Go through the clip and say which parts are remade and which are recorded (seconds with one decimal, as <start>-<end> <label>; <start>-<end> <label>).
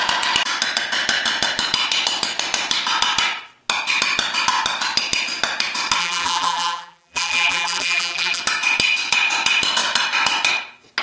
0.0-6.0 recorded; 6.0-8.4 remade; 8.4-11.0 recorded